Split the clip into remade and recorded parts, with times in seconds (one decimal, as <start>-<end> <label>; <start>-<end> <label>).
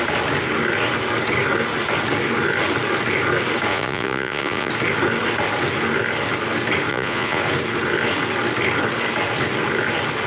0.0-3.7 recorded; 3.7-4.7 remade; 4.7-6.9 recorded; 6.9-7.4 remade; 7.4-10.3 recorded